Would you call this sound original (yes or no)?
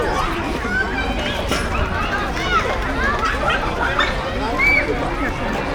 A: yes